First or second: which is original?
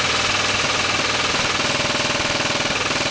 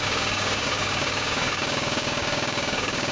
first